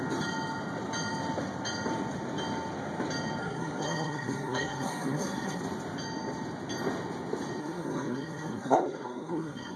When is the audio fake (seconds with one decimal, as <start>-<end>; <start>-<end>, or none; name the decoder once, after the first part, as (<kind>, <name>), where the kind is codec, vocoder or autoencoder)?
3.4-5.6 (codec, SNAC); 7.6-9.8